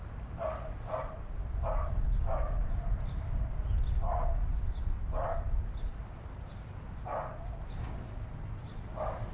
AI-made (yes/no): no